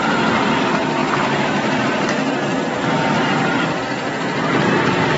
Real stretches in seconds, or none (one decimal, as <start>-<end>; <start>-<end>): 0.0-5.2